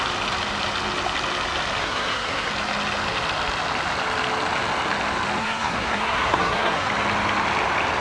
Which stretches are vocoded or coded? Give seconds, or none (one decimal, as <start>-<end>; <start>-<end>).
1.8-2.5; 5.4-6.9